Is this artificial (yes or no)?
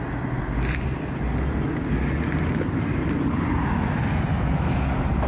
no